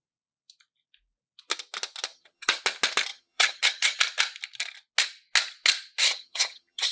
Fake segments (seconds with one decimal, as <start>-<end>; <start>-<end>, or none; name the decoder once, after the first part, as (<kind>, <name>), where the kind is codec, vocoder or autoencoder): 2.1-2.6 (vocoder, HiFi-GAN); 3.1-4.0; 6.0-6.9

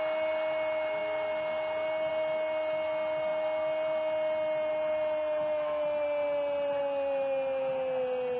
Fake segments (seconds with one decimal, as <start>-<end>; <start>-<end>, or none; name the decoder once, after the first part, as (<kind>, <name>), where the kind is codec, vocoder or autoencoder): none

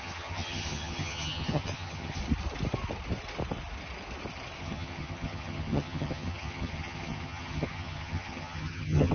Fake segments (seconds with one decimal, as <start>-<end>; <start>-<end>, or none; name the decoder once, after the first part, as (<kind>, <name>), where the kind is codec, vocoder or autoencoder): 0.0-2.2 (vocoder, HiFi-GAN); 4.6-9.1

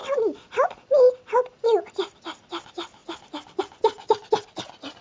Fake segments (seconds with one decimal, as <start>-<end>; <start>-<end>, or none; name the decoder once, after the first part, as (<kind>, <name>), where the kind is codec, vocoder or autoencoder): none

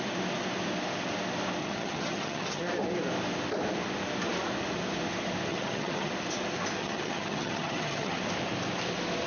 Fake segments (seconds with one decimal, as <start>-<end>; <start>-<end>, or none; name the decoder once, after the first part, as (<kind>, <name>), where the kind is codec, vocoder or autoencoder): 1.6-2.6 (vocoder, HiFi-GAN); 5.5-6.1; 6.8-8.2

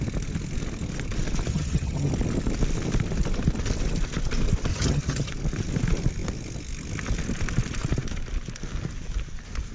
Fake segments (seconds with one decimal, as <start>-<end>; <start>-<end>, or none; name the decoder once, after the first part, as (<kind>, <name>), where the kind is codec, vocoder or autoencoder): 1.5-2.1 (vocoder, HiFi-GAN); 4.7-5.3

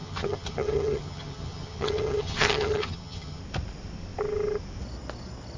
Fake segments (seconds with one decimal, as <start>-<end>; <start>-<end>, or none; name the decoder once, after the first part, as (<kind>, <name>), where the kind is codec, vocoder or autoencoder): 0.0-3.4 (vocoder, HiFi-GAN)